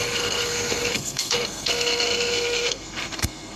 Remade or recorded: remade